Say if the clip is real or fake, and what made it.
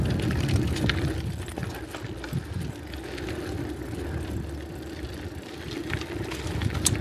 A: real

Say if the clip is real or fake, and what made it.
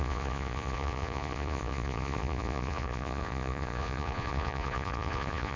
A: fake, vocoder, Vocos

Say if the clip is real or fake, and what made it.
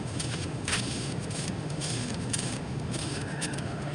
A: fake, autoencoder, DAC-VAE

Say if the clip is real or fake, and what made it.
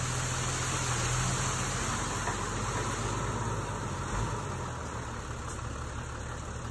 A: real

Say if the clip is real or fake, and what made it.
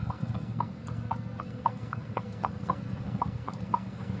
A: fake, codec, SNAC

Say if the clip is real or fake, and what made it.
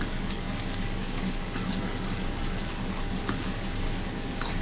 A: fake, codec, DAC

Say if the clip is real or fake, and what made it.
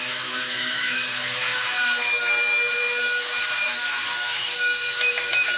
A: fake, autoencoder, DAC-VAE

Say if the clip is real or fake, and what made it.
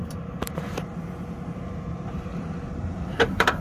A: fake, vocoder, BigVGAN v2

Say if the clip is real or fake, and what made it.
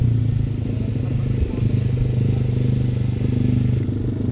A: real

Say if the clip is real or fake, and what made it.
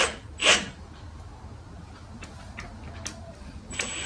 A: real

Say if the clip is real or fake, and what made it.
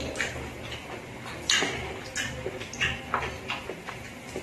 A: real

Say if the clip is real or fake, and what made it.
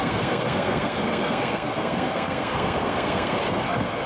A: fake, codec, SNAC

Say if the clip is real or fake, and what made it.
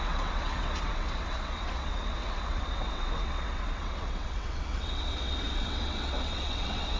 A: fake, vocoder, WaveNeXt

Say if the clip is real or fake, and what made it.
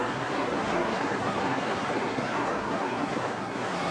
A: fake, codec, SNAC